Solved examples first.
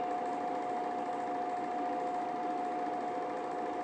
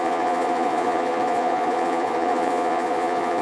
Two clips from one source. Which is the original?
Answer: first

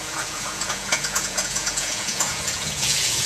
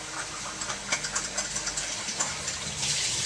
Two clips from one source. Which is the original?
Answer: second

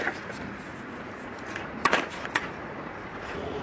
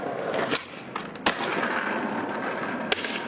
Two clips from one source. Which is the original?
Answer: second